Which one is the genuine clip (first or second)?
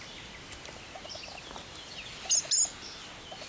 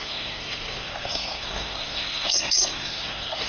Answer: first